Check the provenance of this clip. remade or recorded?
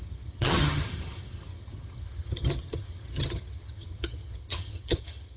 remade